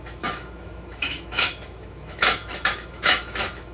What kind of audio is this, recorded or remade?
remade